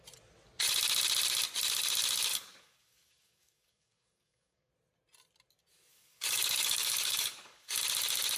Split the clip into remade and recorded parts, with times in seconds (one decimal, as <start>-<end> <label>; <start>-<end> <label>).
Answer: 0.0-2.3 recorded; 2.3-4.7 remade; 4.7-5.9 recorded; 5.9-7.8 remade; 7.8-8.4 recorded